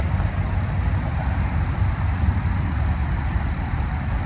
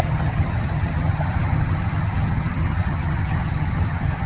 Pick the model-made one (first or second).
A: second